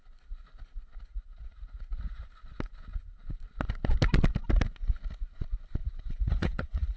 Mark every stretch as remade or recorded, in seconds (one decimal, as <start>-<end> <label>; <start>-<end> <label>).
0.0-1.1 recorded; 1.1-2.3 remade; 2.3-2.9 recorded; 2.9-3.4 remade; 3.4-5.8 recorded; 5.8-7.0 remade